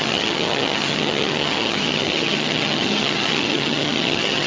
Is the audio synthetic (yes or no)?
yes